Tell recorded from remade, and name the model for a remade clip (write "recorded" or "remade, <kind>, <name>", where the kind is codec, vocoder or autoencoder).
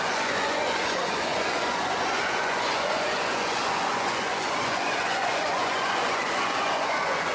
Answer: remade, vocoder, Vocos